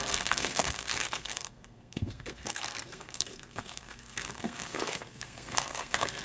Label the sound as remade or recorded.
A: remade